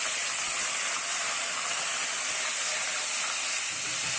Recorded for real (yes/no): yes